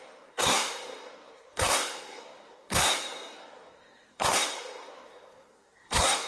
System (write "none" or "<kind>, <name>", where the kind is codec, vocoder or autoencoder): codec, SNAC